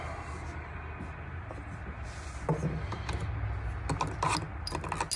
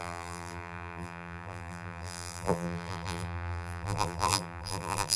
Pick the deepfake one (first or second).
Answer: second